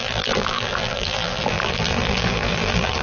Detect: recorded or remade remade